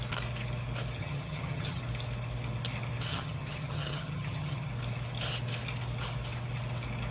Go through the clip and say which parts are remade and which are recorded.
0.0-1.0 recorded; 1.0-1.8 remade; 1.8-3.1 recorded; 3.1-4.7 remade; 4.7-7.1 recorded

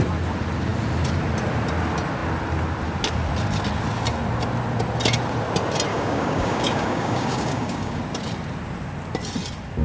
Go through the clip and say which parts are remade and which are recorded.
0.0-5.9 recorded; 5.9-8.0 remade; 8.0-9.8 recorded

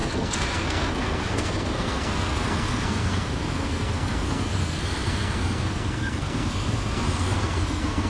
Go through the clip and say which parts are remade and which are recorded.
0.0-8.1 remade

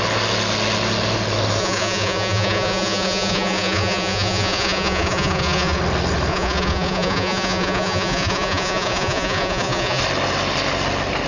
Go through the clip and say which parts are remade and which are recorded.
0.0-1.6 recorded; 1.6-5.8 remade; 5.8-6.3 recorded; 6.3-10.0 remade; 10.0-11.3 recorded

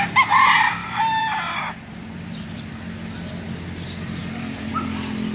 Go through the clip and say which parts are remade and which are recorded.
0.0-0.8 recorded; 0.8-2.7 remade; 2.7-4.2 recorded; 4.2-4.7 remade; 4.7-5.3 recorded

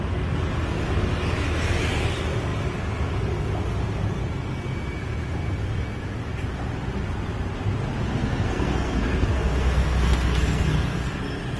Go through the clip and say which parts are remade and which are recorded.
0.0-8.2 recorded; 8.2-11.2 remade; 11.2-11.6 recorded

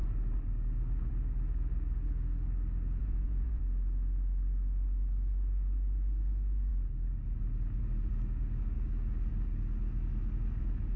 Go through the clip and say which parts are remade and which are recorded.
0.0-3.0 recorded; 3.0-3.6 remade; 3.6-11.0 recorded